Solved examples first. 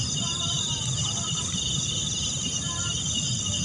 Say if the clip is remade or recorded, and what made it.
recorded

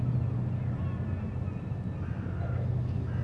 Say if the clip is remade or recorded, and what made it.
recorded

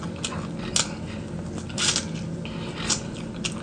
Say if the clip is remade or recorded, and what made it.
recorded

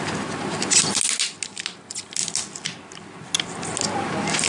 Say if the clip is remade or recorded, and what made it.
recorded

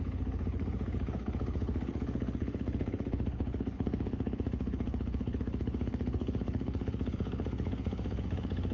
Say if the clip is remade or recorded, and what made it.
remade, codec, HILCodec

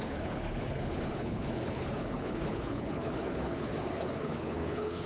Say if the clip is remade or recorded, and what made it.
remade, codec, HILCodec